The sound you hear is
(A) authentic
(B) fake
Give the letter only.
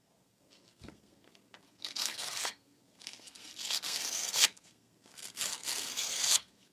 B